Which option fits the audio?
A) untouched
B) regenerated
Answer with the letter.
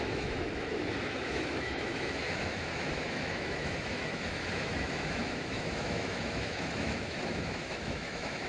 B